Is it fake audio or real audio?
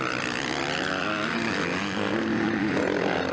real